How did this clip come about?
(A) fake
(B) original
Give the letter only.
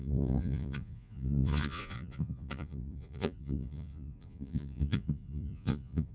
A